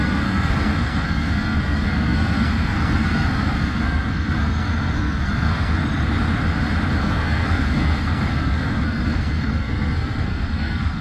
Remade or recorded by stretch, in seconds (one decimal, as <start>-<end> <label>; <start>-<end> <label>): 0.0-5.8 remade; 5.8-7.0 recorded; 7.0-11.0 remade